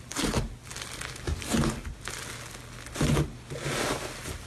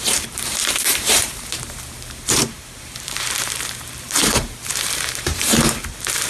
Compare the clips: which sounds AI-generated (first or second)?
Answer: second